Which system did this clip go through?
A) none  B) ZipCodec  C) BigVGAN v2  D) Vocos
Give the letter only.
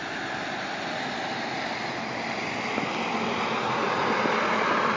A